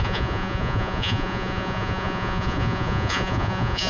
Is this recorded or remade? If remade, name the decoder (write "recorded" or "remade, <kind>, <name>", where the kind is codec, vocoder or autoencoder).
remade, vocoder, Vocos